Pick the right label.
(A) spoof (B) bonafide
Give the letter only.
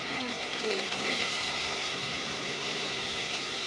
A